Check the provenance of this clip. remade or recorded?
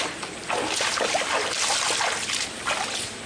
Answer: recorded